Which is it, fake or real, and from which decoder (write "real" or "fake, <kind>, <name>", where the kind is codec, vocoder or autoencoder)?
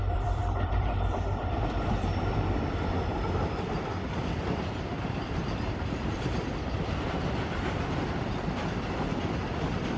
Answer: fake, vocoder, BigVGAN v2